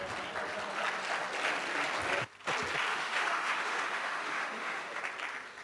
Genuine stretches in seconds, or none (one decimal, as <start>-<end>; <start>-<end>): 0.0-2.9; 5.0-5.6